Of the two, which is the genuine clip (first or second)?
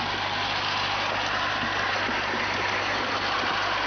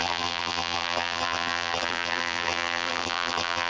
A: first